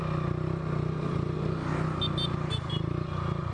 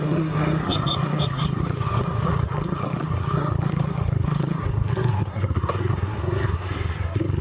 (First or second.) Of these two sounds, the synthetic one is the second